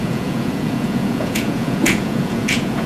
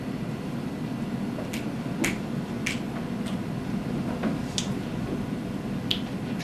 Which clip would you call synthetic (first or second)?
first